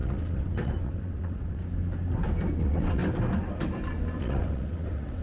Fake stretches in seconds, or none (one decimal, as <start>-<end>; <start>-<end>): 0.0-1.6; 2.6-3.0; 4.2-5.2